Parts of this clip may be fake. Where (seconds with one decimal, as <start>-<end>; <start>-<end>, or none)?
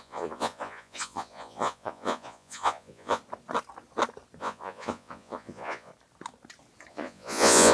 0.0-3.2; 4.4-5.9; 6.9-7.7